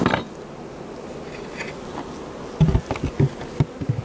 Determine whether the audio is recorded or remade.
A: recorded